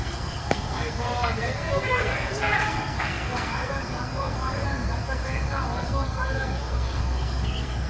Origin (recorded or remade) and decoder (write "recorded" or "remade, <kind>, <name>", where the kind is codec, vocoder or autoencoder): remade, codec, SNAC